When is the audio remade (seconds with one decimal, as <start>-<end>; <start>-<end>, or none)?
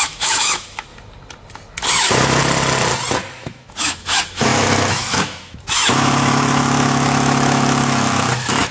0.0-0.9; 1.9-2.4; 3.4-8.7